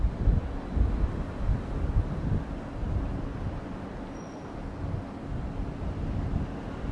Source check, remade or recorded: recorded